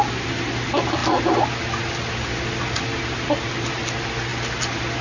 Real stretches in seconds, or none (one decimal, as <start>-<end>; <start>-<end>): 0.0-5.0